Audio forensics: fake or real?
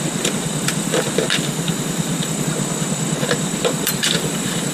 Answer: fake